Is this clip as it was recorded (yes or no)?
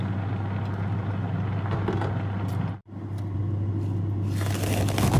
yes